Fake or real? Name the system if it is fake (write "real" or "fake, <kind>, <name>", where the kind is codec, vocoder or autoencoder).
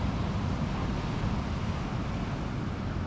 real